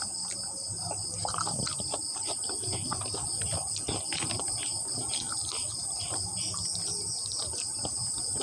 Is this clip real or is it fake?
real